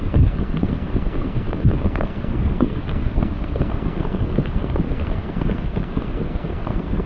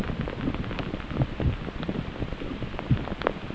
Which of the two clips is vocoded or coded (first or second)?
first